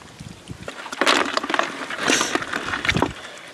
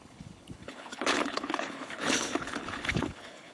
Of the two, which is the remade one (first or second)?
second